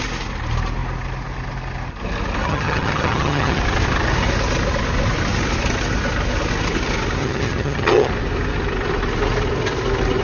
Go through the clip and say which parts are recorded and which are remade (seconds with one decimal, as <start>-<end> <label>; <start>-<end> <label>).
0.0-2.4 recorded; 2.4-3.6 remade; 3.6-7.2 recorded; 7.2-8.1 remade; 8.1-10.2 recorded